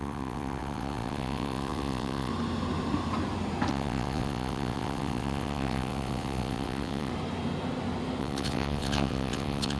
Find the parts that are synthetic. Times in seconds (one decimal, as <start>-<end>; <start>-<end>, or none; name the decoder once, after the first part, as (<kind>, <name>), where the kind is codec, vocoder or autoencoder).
0.0-2.3 (vocoder, WaveNeXt); 3.7-7.1; 8.2-9.8